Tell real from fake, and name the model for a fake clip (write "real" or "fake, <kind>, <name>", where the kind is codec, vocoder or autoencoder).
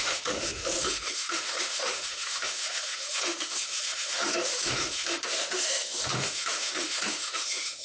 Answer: fake, autoencoder, DAC-VAE